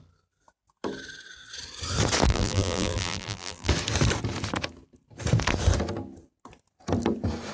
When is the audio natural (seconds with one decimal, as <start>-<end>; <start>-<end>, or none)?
0.0-2.3; 3.7-7.5